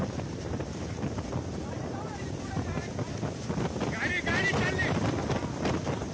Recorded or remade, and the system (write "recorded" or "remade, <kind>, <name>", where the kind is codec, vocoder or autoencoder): recorded